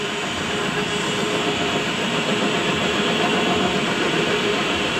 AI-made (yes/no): yes